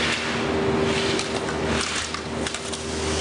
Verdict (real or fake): real